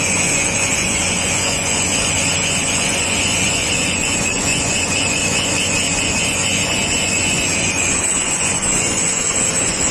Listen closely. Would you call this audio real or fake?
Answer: fake